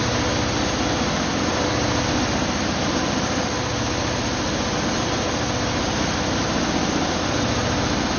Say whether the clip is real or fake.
real